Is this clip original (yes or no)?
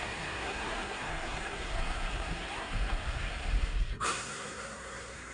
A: no